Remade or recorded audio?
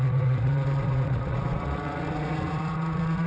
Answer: remade